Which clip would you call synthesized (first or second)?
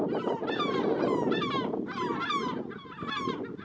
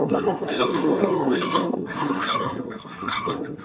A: second